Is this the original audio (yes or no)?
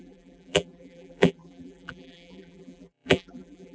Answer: no